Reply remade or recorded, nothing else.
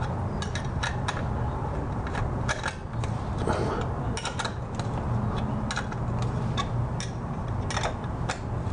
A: recorded